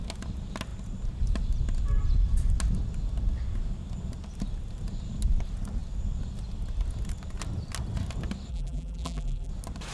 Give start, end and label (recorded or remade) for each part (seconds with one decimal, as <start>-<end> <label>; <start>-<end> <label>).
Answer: 0.0-8.5 recorded; 8.5-9.5 remade; 9.5-9.9 recorded